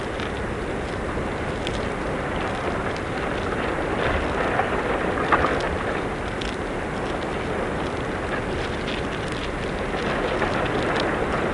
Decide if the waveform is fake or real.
real